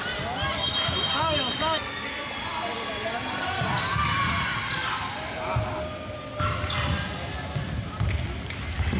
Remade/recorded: recorded